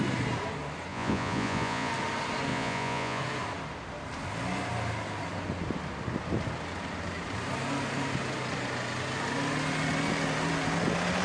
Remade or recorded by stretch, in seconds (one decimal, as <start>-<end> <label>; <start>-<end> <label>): 0.0-0.9 recorded; 0.9-1.9 remade; 1.9-2.5 recorded; 2.5-3.2 remade; 3.2-11.2 recorded